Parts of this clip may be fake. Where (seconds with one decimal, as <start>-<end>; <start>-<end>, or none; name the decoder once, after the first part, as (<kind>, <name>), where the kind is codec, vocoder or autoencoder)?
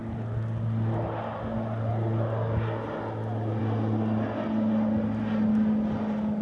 none